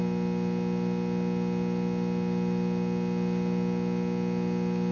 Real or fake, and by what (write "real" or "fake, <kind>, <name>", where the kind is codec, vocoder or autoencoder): real